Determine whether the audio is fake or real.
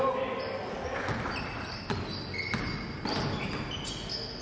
real